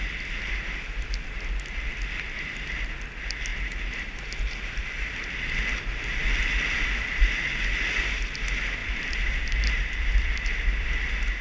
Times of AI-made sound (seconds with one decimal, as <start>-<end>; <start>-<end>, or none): 3.5-4.8; 8.8-10.9